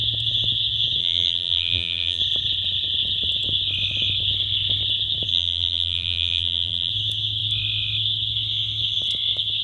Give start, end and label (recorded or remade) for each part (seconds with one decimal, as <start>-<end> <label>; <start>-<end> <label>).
0.0-1.0 recorded; 1.0-2.2 remade; 2.2-5.3 recorded; 5.3-6.9 remade; 6.9-9.6 recorded